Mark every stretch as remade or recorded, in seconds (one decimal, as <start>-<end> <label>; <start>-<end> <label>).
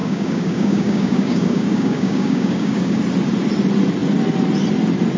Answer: 0.0-3.0 remade; 3.0-5.2 recorded